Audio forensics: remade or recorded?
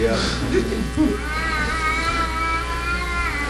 recorded